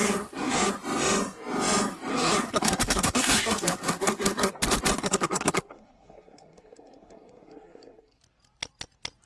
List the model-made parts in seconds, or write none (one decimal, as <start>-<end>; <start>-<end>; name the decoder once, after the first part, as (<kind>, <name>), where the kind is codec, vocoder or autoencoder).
0.0-0.7 (codec, SNAC); 2.1-4.5; 5.0-8.2